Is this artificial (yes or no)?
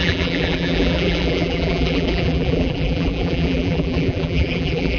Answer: yes